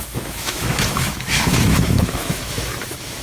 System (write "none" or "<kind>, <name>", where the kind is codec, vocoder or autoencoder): autoencoder, DAC-VAE